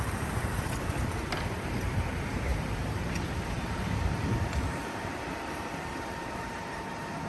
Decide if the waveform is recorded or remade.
remade